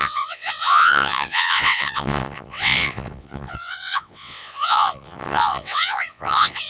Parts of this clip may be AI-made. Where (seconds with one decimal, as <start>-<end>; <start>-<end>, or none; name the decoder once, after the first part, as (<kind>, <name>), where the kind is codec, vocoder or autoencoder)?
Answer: 0.0-6.7 (vocoder, WaveNeXt)